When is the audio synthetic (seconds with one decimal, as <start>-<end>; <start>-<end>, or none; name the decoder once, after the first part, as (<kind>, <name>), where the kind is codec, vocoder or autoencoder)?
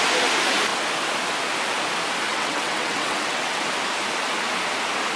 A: 2.3-3.6 (vocoder, WaveNeXt)